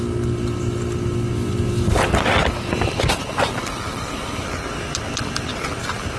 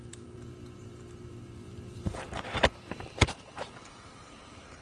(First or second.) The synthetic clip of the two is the second